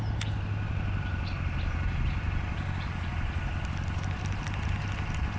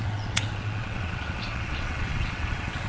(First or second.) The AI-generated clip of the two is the second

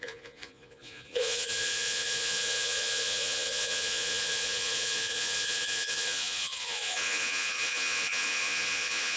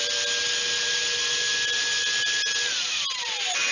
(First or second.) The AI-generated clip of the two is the first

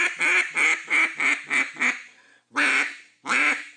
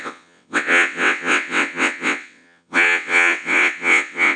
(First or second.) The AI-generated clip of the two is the second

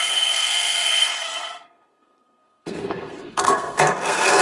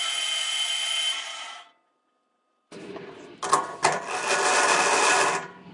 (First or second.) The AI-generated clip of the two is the first